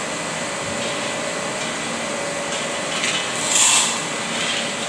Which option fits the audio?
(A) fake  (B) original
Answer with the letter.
B